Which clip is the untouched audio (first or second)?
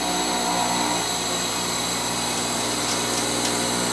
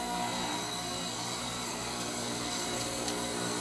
first